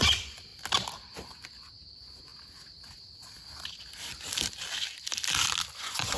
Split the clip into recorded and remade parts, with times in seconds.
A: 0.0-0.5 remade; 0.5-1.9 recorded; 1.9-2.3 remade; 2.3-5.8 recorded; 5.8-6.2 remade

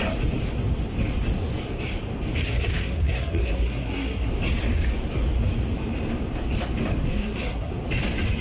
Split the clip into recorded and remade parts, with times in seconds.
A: 0.0-2.4 recorded; 2.4-4.3 remade; 4.3-7.1 recorded; 7.1-7.7 remade; 7.7-8.4 recorded

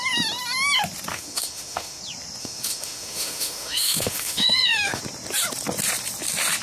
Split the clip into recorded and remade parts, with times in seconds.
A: 0.0-1.1 recorded; 1.1-2.0 remade; 2.0-2.4 recorded; 2.4-5.0 remade; 5.0-6.6 recorded

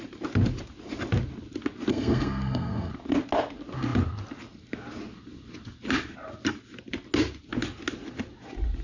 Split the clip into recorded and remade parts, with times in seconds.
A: 0.0-1.9 recorded; 1.9-2.9 remade; 2.9-8.8 recorded

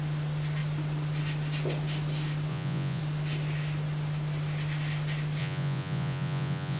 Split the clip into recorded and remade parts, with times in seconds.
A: 0.0-2.5 recorded; 2.5-3.0 remade; 3.0-5.4 recorded; 5.4-6.8 remade

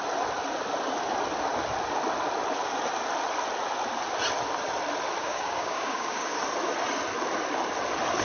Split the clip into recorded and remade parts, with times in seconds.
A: 0.0-5.2 recorded; 5.2-6.4 remade; 6.4-8.2 recorded

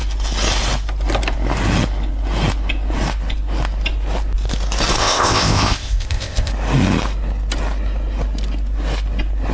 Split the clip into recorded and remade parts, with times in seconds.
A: 0.0-5.0 recorded; 5.0-6.5 remade; 6.5-9.5 recorded

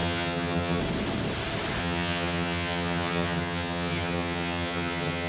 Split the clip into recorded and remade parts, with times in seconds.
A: 0.0-0.8 remade; 0.8-1.8 recorded; 1.8-5.3 remade